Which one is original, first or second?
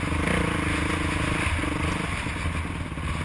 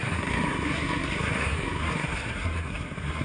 first